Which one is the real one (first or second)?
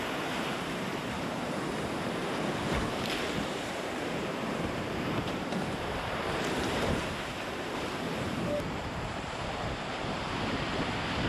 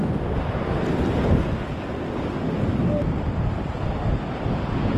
second